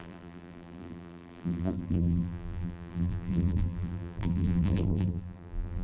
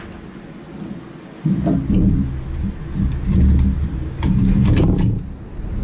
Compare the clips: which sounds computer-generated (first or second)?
first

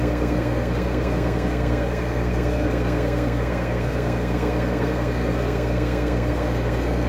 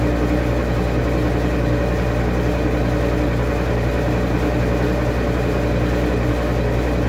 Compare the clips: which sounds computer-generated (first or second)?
first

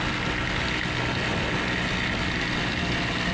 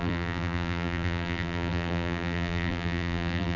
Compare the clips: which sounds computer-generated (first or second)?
second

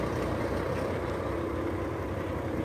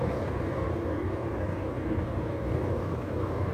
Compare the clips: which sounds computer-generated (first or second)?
second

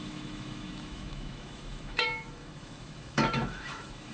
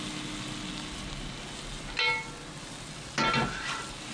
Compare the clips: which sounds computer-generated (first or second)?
first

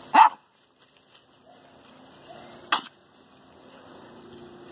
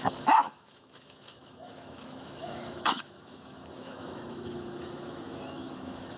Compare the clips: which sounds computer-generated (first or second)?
second